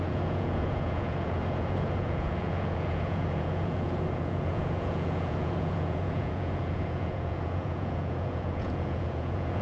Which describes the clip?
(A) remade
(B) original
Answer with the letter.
A